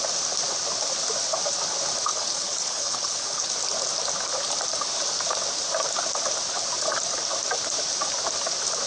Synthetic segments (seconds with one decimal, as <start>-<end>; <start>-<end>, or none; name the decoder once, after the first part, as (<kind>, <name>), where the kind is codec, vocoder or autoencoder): 2.1-3.5 (codec, HILCodec)